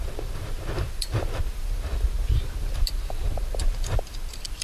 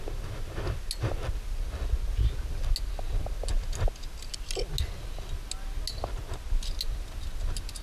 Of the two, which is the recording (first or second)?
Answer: second